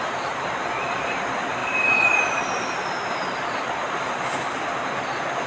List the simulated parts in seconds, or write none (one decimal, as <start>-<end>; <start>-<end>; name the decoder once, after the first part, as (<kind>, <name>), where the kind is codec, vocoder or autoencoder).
none